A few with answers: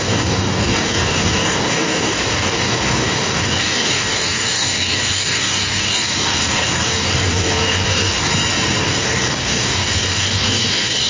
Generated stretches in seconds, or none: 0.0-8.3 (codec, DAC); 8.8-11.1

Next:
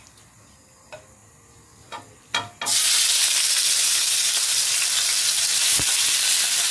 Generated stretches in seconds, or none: none

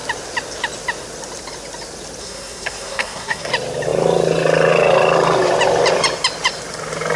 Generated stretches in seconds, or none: 2.2-3.5 (codec, SNAC)